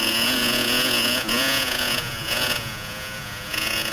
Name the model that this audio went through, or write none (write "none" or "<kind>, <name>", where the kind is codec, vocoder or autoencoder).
vocoder, Vocos